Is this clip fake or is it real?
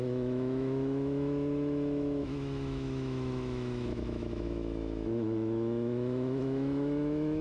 fake